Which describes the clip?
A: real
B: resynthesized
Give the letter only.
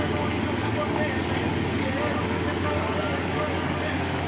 B